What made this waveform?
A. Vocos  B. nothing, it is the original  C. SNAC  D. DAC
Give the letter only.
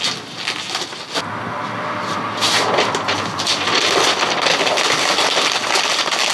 B